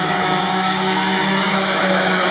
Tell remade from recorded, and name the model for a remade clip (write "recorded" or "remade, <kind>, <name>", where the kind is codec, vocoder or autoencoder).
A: remade, autoencoder, DAC-VAE